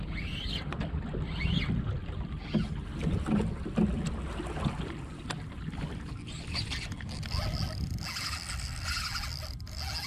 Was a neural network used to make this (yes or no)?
no